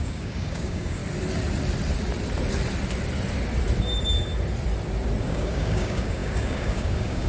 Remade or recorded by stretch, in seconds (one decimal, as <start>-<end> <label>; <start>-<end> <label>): 0.0-1.0 remade; 1.0-5.2 recorded; 5.2-7.3 remade